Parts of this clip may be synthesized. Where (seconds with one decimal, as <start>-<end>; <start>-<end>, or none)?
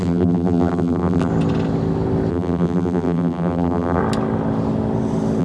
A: 0.0-1.3; 2.3-4.0